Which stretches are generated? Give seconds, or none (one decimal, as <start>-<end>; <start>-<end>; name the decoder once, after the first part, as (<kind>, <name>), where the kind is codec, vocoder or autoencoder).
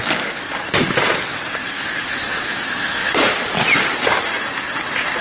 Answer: 1.6-3.1 (autoencoder, DAC-VAE)